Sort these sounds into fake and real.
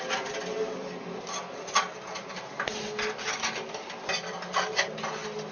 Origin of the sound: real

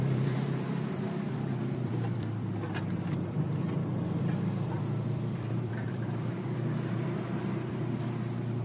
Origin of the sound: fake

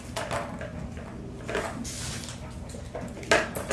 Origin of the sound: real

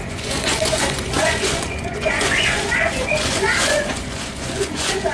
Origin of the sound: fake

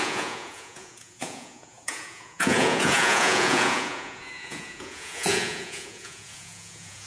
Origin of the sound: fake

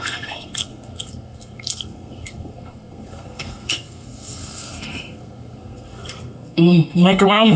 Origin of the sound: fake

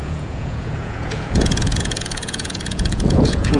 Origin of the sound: fake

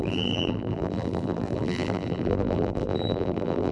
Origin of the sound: fake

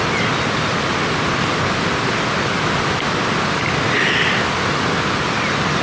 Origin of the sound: real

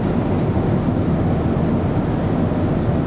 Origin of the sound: real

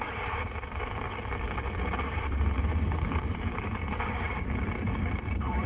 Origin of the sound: fake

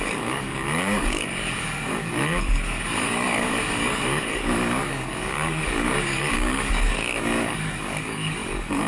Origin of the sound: fake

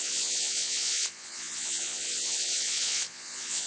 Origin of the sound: fake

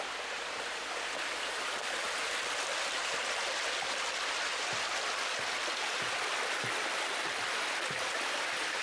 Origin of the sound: fake